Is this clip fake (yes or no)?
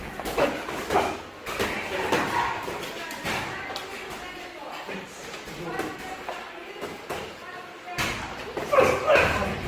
no